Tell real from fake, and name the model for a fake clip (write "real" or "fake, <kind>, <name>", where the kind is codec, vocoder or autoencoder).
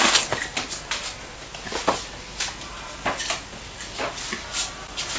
real